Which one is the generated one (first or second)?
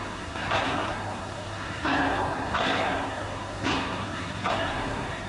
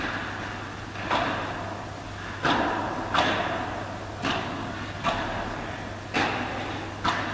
first